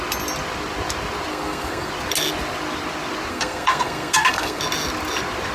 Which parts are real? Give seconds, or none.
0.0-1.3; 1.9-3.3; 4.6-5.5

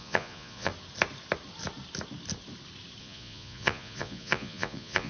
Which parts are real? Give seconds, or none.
0.7-3.0

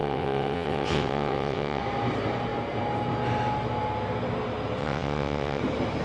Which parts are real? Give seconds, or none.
1.8-4.8; 5.6-6.0